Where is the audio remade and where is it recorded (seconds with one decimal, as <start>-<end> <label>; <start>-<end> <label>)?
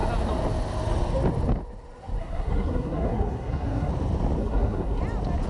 0.0-2.2 recorded; 2.2-3.9 remade; 3.9-4.4 recorded; 4.4-5.0 remade; 5.0-5.5 recorded